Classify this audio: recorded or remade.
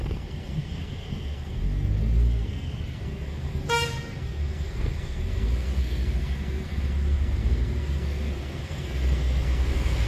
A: remade